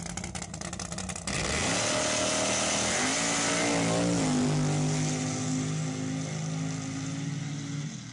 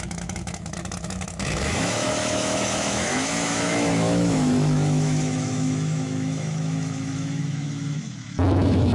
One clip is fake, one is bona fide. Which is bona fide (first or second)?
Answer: first